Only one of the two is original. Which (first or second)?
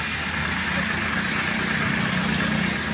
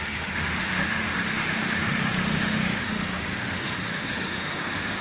first